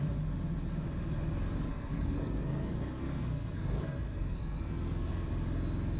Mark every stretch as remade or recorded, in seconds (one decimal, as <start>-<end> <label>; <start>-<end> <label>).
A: 0.0-1.7 recorded; 1.7-5.3 remade; 5.3-6.0 recorded